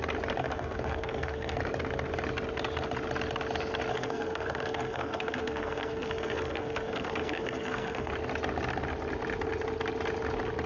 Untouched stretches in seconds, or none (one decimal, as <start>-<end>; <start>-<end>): 0.0-0.4; 1.6-3.9; 8.1-10.7